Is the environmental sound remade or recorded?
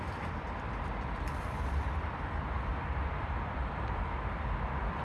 remade